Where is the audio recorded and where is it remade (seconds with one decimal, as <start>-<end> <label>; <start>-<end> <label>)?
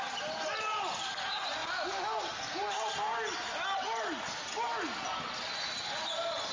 0.0-6.5 recorded